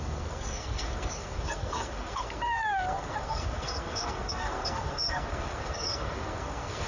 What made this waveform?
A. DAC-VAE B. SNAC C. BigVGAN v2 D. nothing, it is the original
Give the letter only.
B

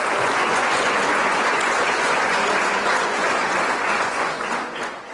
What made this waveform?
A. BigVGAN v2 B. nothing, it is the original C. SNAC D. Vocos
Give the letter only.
D